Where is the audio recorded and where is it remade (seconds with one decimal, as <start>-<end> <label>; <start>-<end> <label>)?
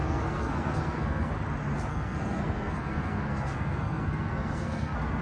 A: 0.0-1.3 remade; 1.3-1.9 recorded; 1.9-5.2 remade